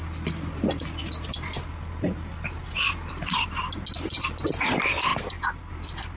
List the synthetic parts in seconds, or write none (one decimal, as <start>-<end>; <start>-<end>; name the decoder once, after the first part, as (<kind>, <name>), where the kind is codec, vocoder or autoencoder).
5.1-5.7 (vocoder, BigVGAN v2)